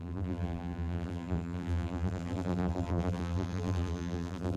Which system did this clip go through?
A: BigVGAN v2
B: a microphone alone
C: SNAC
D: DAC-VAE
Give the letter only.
A